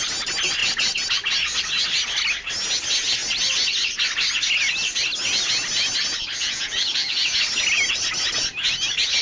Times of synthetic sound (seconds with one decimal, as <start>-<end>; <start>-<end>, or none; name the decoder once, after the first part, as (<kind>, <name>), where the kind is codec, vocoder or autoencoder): 6.4-7.2 (vocoder, Vocos)